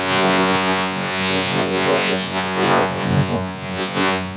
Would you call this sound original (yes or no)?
no